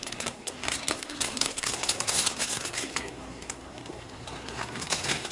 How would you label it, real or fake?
fake